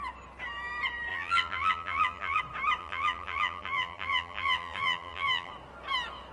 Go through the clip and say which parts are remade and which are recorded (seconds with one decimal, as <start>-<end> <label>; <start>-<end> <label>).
0.0-1.1 recorded; 1.1-2.4 remade; 2.4-2.8 recorded; 2.8-5.5 remade; 5.5-6.3 recorded